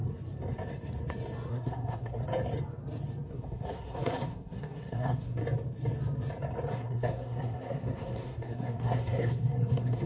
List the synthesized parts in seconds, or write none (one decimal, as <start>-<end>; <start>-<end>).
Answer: 1.5-2.2; 3.3-5.4; 6.7-10.1